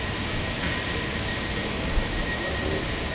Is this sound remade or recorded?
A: recorded